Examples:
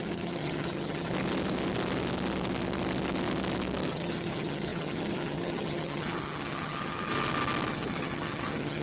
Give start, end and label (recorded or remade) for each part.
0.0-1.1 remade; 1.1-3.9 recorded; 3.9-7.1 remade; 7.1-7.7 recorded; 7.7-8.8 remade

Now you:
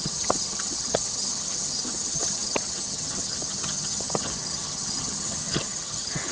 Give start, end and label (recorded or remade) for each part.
0.0-6.3 remade

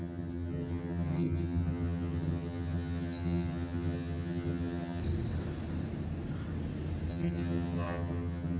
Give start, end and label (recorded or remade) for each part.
0.0-5.0 remade; 5.0-7.1 recorded; 7.1-8.6 remade

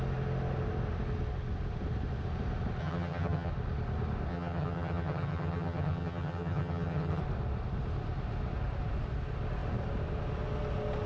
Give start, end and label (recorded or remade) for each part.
0.0-2.8 recorded; 2.8-3.5 remade; 3.5-4.3 recorded; 4.3-7.2 remade; 7.2-11.1 recorded